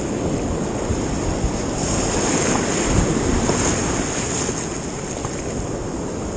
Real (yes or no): yes